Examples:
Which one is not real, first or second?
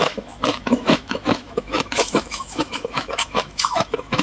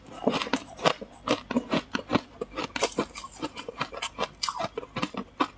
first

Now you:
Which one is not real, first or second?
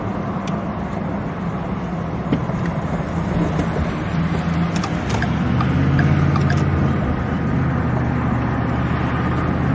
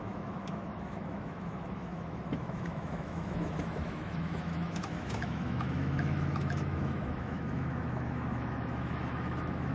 second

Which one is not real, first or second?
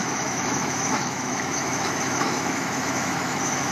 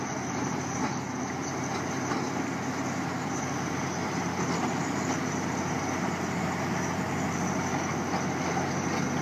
first